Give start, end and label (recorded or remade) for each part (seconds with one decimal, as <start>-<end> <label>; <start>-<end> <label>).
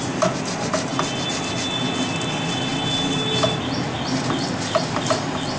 0.0-5.6 recorded